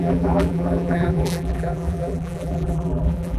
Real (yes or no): no